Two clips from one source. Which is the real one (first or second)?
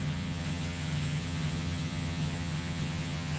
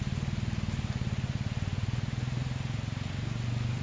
second